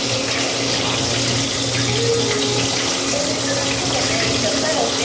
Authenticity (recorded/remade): recorded